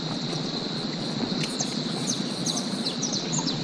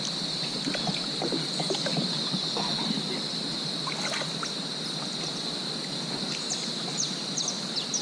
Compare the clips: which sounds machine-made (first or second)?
first